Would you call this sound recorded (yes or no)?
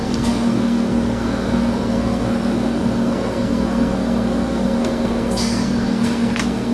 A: no